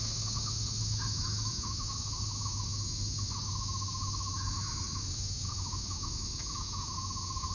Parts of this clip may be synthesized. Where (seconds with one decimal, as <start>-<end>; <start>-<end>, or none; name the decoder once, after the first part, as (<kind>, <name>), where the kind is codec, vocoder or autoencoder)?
0.0-7.5 (autoencoder, DAC-VAE)